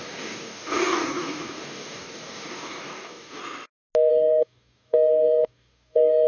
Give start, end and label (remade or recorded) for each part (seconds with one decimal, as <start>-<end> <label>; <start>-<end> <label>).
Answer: 0.0-3.4 remade; 3.4-4.1 recorded; 4.1-6.3 remade